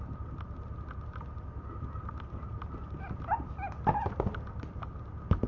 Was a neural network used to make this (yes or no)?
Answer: no